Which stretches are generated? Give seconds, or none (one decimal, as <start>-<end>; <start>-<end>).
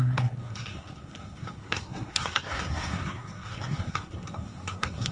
0.0-5.1